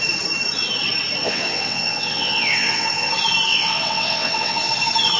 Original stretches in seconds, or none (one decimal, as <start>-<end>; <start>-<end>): 0.0-1.2; 3.1-3.5; 4.7-5.2